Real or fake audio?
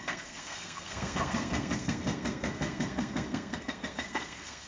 fake